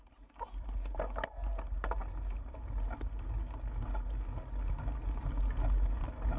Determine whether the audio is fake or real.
real